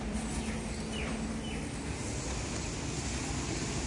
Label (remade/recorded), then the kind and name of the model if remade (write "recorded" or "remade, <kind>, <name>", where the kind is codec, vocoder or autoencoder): recorded